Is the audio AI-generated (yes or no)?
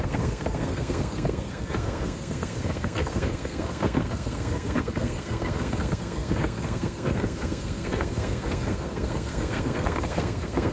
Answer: yes